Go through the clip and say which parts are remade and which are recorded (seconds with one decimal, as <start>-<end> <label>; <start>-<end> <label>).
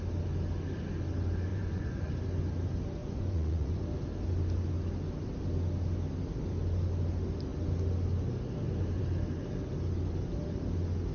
0.0-1.5 recorded; 1.5-2.1 remade; 2.1-3.0 recorded; 3.0-3.8 remade; 3.8-11.1 recorded